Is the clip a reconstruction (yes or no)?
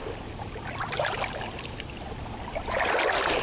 no